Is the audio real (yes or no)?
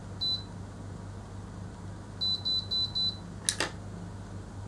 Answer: yes